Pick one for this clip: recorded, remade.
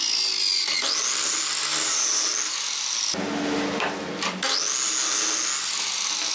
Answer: recorded